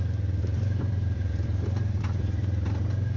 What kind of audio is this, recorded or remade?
remade